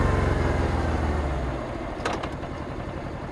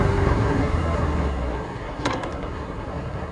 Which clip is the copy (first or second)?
second